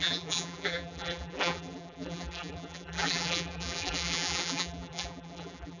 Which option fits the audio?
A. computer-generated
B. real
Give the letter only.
A